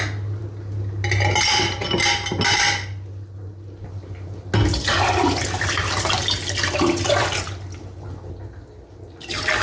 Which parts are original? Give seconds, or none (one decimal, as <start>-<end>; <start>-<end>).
0.0-9.6